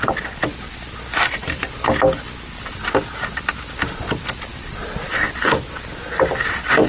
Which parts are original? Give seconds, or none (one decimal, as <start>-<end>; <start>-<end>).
0.0-6.9